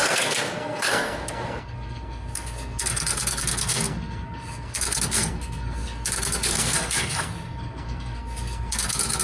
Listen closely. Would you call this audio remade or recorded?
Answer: remade